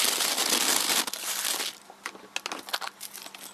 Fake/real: real